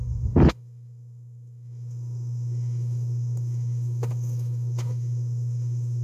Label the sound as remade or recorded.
remade